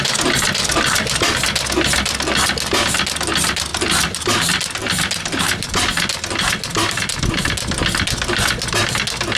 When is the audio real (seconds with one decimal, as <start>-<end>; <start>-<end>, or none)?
0.0-3.7; 5.4-6.7; 7.4-9.4